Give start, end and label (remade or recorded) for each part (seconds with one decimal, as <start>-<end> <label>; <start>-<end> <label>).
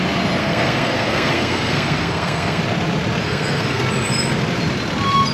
0.0-0.4 recorded; 0.4-2.6 remade; 2.6-3.2 recorded; 3.2-3.8 remade; 3.8-5.3 recorded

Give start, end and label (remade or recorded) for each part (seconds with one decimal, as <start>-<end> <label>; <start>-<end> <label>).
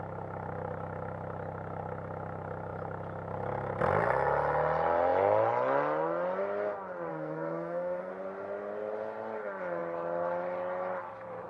0.0-7.1 recorded; 7.1-8.1 remade; 8.1-11.5 recorded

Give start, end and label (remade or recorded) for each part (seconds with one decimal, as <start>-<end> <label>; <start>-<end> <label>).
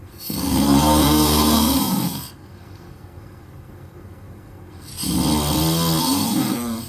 0.0-4.9 remade; 4.9-6.0 recorded; 6.0-6.9 remade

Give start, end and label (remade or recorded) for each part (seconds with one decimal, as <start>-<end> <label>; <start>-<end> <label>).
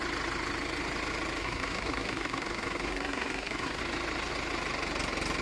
0.0-1.4 recorded; 1.4-3.8 remade; 3.8-5.4 recorded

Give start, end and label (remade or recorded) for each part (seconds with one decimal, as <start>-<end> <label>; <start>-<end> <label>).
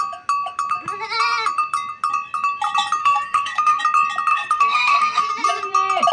0.0-3.0 recorded; 3.0-3.8 remade; 3.8-4.3 recorded; 4.3-5.3 remade; 5.3-6.1 recorded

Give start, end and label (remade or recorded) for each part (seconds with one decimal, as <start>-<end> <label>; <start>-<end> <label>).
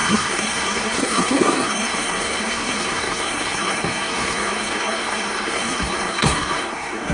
0.0-7.1 remade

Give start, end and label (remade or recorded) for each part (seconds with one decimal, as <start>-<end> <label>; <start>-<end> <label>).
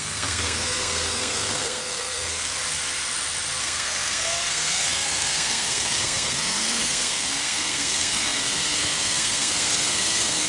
0.0-2.6 remade; 2.6-3.6 recorded; 3.6-10.5 remade